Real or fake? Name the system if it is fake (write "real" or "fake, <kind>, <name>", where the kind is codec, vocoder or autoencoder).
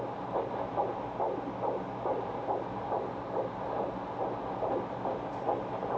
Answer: real